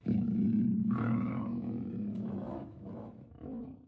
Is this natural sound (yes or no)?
no